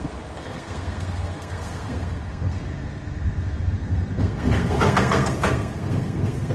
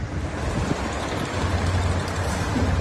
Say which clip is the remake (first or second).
first